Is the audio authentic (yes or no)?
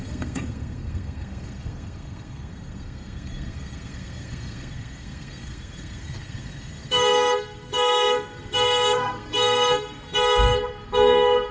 no